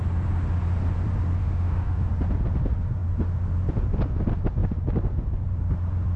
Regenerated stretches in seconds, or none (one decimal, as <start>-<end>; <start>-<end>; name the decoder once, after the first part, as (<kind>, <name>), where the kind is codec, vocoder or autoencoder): 1.4-2.1 (autoencoder, DAC-VAE)